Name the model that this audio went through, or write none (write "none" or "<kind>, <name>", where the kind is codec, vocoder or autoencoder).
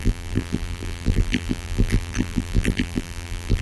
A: vocoder, BigVGAN v2